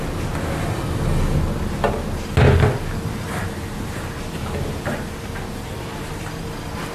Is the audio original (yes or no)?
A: yes